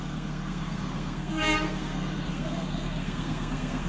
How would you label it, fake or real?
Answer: fake